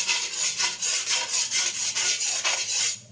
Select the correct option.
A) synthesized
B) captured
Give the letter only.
B